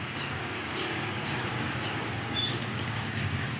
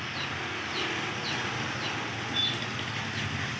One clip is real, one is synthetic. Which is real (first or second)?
second